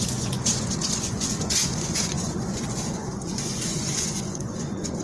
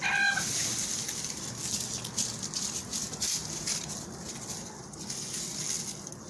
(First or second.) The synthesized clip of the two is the first